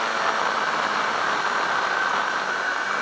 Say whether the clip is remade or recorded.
recorded